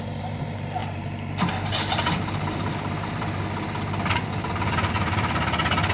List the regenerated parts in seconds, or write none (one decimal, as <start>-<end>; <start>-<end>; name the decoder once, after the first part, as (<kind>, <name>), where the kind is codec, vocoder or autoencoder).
0.8-3.4 (vocoder, BigVGAN v2)